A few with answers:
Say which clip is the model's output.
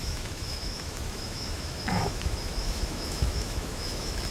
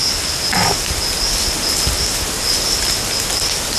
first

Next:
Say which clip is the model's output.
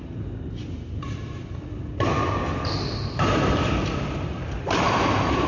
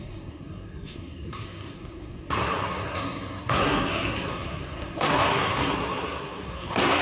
second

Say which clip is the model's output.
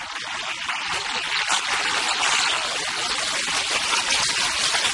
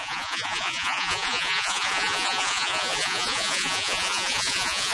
second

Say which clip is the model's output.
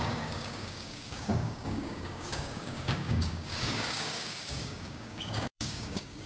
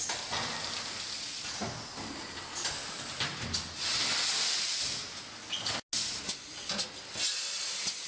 first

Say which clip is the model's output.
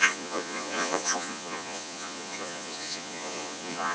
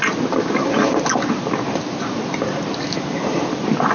first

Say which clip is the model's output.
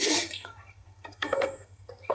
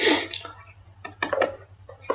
first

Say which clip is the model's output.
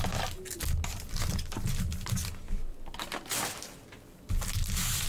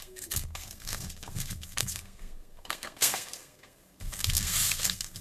second